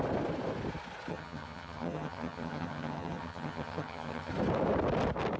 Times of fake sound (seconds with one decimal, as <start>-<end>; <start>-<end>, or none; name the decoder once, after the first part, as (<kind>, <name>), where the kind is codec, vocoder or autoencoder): 1.1-4.3 (vocoder, HiFi-GAN)

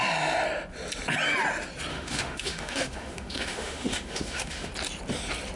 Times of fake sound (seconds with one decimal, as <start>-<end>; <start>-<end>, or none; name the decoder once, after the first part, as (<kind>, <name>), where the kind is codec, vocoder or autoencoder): 1.9-4.7 (autoencoder, DAC-VAE)

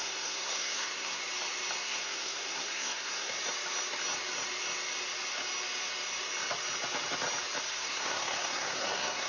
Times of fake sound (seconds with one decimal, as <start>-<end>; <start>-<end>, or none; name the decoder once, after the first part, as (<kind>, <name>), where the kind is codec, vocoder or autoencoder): 0.0-1.2 (codec, SNAC); 1.8-3.4; 7.6-9.3

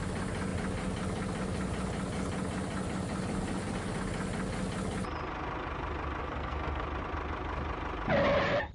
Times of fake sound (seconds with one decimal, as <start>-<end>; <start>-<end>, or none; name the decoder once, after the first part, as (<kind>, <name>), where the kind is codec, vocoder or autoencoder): 6.2-6.8 (codec, SNAC)

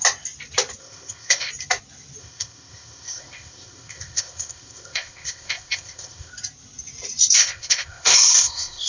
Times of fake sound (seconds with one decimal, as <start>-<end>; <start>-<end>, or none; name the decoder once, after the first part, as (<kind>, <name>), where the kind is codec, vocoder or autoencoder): 0.8-1.5 (codec, ZipCodec); 2.2-6.3; 7.4-8.9

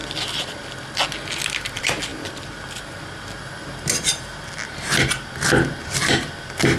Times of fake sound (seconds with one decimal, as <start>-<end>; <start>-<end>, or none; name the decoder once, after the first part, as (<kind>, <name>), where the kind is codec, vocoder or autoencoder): none

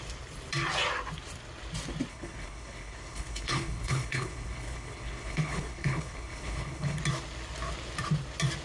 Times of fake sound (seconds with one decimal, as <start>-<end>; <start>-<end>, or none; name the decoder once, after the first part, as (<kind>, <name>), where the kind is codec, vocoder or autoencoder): 2.1-7.0 (codec, HILCodec)

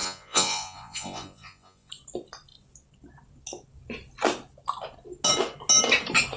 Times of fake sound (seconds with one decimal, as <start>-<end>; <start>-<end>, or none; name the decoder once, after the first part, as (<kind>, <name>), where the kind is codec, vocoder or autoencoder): 0.0-1.9 (vocoder, Vocos)